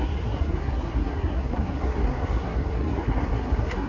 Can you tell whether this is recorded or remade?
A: remade